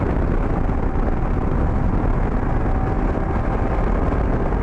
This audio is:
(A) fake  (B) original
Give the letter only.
B